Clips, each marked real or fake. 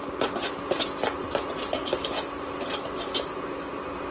real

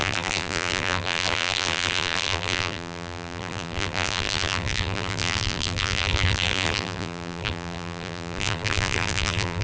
fake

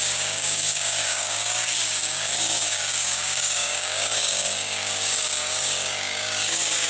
fake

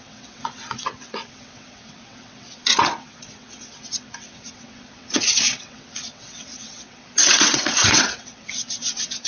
fake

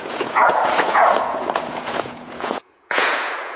fake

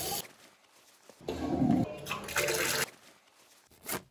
real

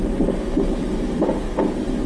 real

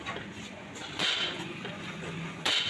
fake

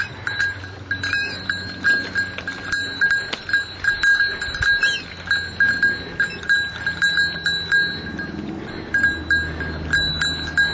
real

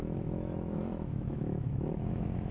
fake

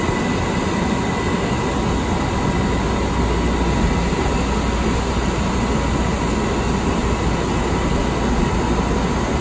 real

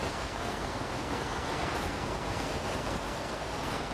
fake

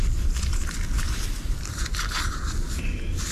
real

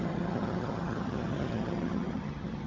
fake